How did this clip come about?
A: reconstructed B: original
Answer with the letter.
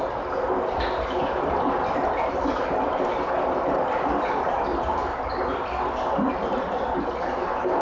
B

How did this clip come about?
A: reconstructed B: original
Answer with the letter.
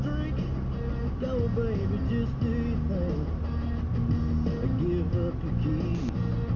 B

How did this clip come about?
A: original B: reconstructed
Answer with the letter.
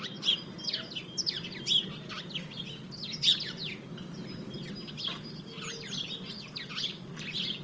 A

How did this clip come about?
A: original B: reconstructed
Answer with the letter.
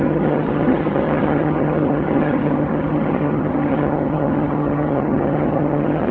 B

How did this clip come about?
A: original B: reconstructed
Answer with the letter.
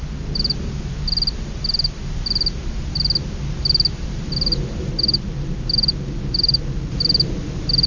A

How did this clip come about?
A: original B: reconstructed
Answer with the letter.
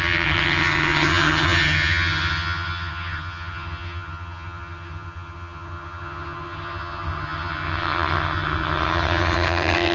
B